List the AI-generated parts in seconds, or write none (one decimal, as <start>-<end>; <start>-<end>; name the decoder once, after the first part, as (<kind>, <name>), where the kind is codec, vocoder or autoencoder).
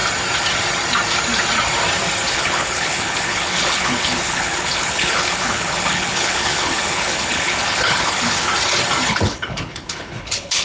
2.3-8.5 (codec, HILCodec); 9.1-10.6